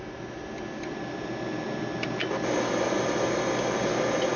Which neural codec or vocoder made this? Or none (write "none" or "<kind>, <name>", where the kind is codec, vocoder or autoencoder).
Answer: none